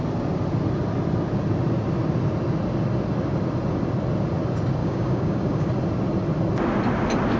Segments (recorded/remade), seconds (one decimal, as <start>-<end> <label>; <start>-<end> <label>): 0.0-4.8 recorded; 4.8-5.7 remade; 5.7-7.4 recorded